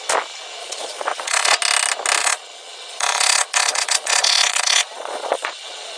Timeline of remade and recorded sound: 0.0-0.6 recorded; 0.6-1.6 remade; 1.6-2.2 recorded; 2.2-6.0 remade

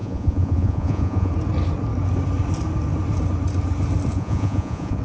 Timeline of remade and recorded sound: 0.0-1.3 remade; 1.3-4.1 recorded; 4.1-5.0 remade

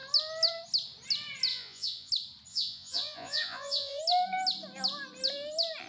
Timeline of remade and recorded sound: 0.0-1.5 recorded; 1.5-2.1 remade; 2.1-2.5 recorded; 2.5-4.0 remade; 4.0-5.9 recorded

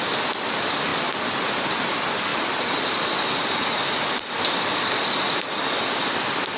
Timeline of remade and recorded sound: 0.0-6.6 recorded

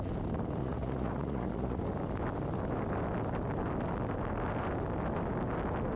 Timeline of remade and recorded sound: 0.0-0.6 recorded; 0.6-1.8 remade; 1.8-6.0 recorded